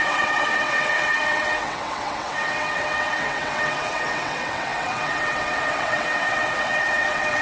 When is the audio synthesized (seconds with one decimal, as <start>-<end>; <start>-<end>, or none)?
0.0-7.4